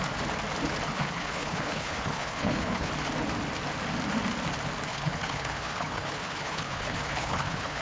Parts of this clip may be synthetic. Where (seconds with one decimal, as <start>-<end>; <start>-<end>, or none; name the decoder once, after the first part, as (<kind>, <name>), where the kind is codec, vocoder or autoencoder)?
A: 0.9-2.9 (codec, HILCodec); 4.9-7.8